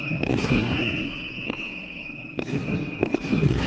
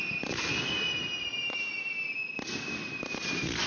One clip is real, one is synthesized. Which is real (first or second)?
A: second